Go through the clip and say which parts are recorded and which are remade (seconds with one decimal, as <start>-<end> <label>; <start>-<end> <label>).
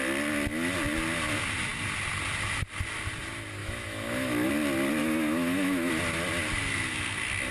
0.0-3.6 recorded; 3.6-4.5 remade; 4.5-5.0 recorded; 5.0-5.9 remade; 5.9-7.5 recorded